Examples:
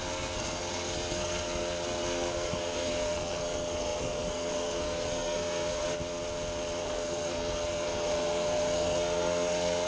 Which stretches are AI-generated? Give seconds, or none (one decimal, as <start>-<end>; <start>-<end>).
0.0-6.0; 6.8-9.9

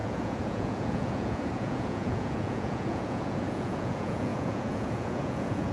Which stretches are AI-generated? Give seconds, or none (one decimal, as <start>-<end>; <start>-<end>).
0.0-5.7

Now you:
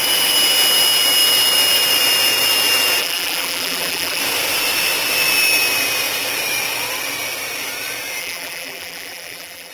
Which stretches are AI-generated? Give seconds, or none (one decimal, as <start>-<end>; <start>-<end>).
3.0-4.2; 8.2-9.7